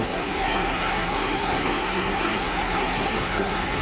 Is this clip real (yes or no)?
no